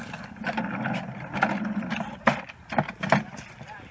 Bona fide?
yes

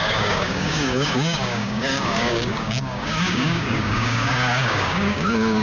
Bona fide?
no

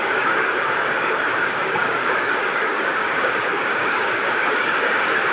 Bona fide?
no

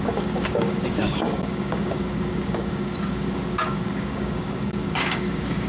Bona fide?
no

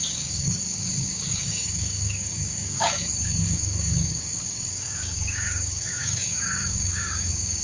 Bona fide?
no